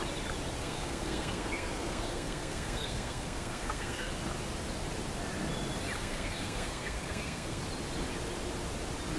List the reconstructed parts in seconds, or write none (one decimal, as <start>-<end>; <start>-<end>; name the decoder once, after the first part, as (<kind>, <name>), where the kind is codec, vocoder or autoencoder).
0.6-4.1 (codec, SNAC); 6.0-7.6